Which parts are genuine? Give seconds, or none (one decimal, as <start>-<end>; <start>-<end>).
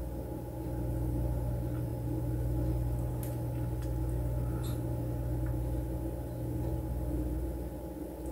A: 0.0-8.3